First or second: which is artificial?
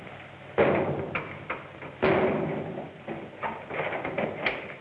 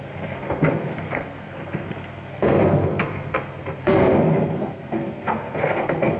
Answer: second